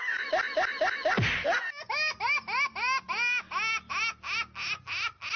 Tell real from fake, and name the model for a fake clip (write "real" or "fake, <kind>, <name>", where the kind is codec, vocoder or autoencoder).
real